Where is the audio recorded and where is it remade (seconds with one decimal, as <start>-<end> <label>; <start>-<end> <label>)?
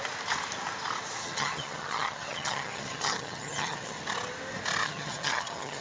0.0-1.2 recorded; 1.2-4.0 remade; 4.0-4.8 recorded; 4.8-5.8 remade